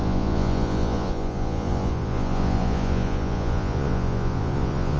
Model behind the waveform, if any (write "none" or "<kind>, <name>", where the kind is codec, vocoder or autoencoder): vocoder, Vocos